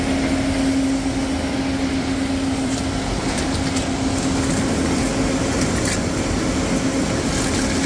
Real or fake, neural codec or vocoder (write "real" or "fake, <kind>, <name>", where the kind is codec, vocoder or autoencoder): real